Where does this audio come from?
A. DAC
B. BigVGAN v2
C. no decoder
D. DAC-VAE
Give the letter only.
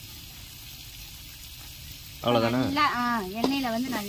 C